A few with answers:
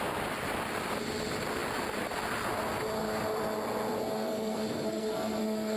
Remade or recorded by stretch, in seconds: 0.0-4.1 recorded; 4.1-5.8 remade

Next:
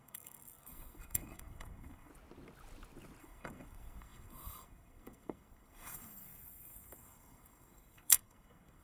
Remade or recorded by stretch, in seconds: 0.0-2.1 remade; 2.1-3.2 recorded; 3.2-8.8 remade

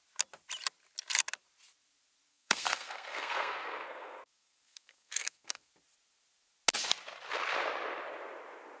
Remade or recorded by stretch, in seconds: 0.0-2.3 recorded; 2.3-5.7 remade; 5.7-8.8 recorded

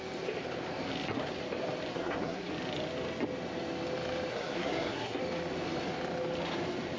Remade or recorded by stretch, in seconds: 0.0-1.9 recorded; 1.9-2.5 remade; 2.5-4.3 recorded; 4.3-5.2 remade; 5.2-7.0 recorded

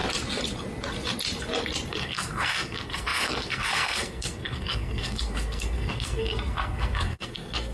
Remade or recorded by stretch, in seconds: 0.0-1.9 recorded; 1.9-7.7 remade